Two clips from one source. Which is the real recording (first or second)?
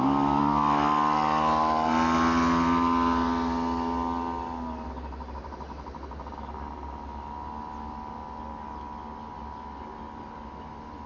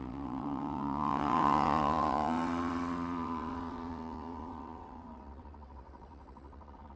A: first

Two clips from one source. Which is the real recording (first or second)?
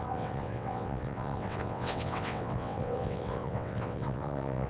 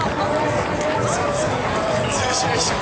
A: second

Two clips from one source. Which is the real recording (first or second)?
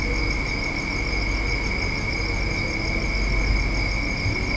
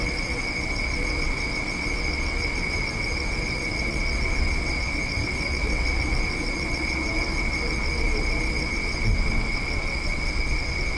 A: first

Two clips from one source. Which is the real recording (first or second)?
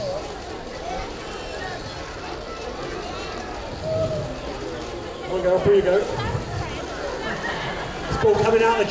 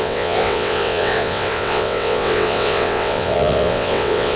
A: first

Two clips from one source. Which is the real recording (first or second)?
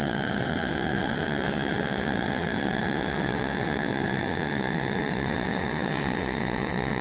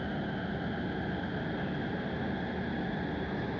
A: second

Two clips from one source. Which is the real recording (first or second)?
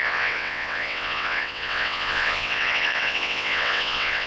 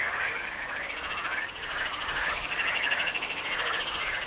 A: second